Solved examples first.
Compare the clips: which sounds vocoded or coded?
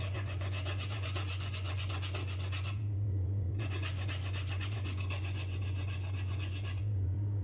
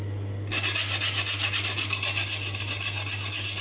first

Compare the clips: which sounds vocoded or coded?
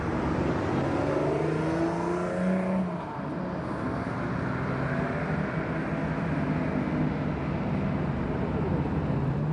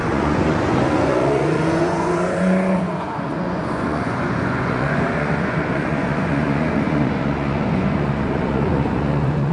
second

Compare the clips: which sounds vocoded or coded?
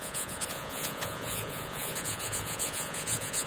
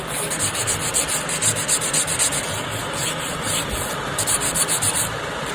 first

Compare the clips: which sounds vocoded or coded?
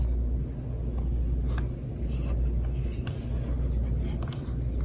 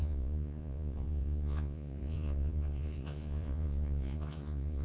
second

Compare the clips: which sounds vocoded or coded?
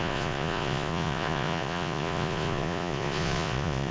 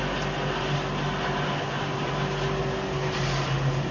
first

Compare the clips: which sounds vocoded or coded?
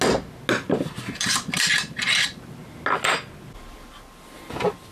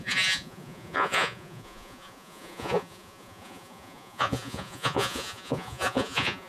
second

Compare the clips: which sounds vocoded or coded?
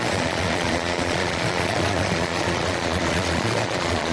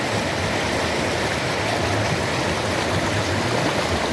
first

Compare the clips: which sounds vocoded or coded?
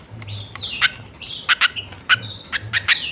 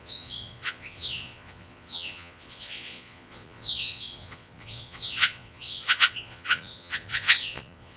second